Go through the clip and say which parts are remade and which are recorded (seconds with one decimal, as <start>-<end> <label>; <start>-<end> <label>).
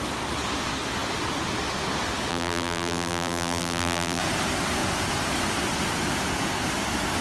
0.0-2.3 recorded; 2.3-4.2 remade; 4.2-7.2 recorded